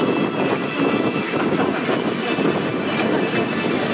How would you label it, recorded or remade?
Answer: recorded